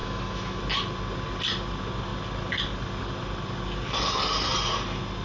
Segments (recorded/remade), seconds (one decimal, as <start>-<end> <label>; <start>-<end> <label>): 0.0-0.6 remade; 0.6-5.2 recorded